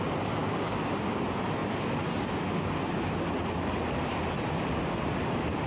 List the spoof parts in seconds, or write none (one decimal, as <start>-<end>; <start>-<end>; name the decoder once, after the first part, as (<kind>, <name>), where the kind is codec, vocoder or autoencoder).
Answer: 0.4-1.2 (codec, DAC)